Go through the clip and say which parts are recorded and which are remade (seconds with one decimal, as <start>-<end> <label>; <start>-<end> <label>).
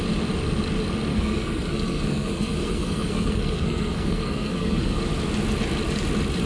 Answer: 0.0-1.1 recorded; 1.1-5.0 remade; 5.0-6.5 recorded